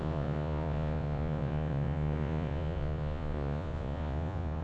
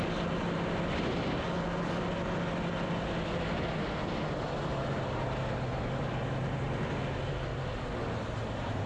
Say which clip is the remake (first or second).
first